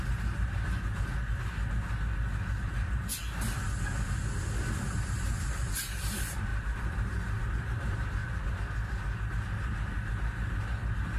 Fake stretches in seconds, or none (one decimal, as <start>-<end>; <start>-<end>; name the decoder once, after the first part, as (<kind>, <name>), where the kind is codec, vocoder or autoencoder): 0.0-1.1 (vocoder, BigVGAN v2); 2.6-3.1; 4.8-8.2; 9.3-11.2

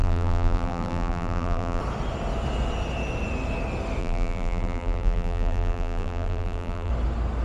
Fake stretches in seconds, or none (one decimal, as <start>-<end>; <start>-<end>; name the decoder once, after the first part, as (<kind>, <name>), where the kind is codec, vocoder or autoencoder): 0.0-1.8 (vocoder, BigVGAN v2); 4.0-6.9

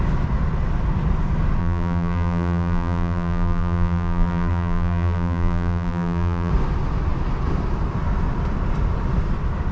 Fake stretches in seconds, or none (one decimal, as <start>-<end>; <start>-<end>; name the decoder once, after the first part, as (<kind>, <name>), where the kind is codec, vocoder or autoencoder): 1.6-6.5 (vocoder, BigVGAN v2)

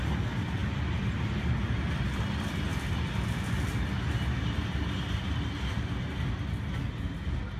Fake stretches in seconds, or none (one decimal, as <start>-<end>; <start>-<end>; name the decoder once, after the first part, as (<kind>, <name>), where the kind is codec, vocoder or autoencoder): none

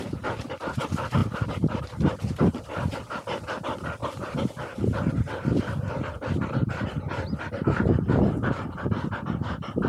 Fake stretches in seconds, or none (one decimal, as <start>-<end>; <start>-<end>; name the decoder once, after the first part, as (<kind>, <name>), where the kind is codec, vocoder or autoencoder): none